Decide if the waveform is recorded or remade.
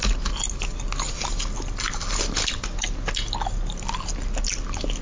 recorded